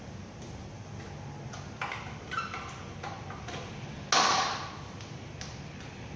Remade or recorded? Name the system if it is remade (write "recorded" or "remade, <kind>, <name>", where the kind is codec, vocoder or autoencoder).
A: recorded